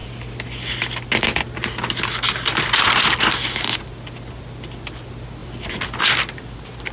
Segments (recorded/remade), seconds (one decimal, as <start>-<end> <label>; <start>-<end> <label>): 0.0-6.9 recorded